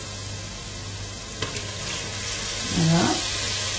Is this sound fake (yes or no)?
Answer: no